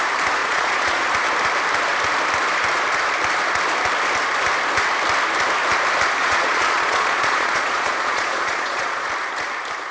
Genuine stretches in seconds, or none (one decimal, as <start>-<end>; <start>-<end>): 0.0-0.4; 1.1-6.2; 9.1-9.9